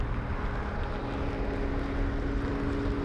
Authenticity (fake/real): real